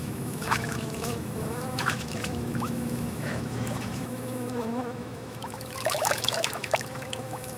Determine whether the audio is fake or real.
fake